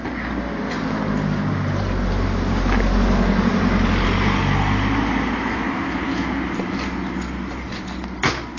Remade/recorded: recorded